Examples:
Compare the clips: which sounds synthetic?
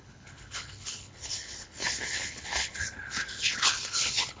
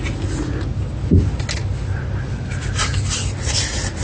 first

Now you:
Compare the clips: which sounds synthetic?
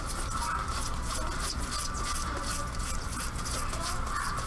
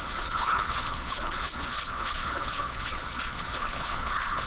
second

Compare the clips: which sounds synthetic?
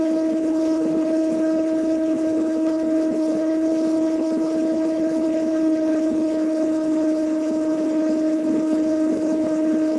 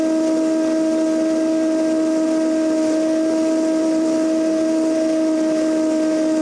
first